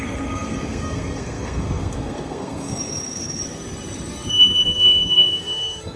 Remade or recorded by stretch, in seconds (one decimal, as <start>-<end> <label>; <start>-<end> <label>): 0.0-3.4 remade; 3.4-4.3 recorded; 4.3-6.0 remade